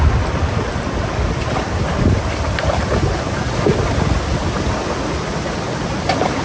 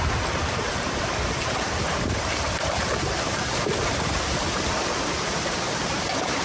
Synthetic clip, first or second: second